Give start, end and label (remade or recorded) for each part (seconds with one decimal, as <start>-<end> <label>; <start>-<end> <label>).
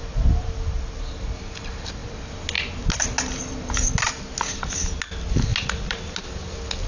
0.0-6.9 recorded